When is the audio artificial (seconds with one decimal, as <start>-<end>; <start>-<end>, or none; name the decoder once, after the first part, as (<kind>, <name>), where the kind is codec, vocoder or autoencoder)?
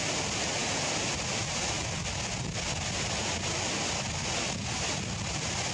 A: none